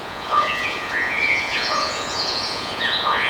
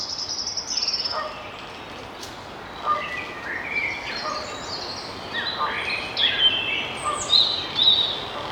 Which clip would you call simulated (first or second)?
first